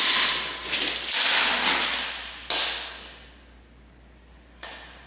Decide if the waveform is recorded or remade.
recorded